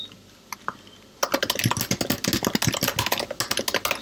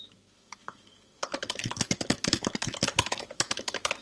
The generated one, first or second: second